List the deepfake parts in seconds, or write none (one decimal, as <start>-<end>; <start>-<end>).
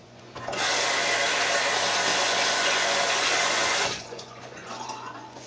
0.0-0.6; 2.1-5.5